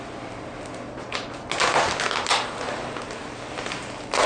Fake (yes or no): no